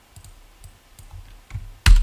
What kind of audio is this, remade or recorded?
recorded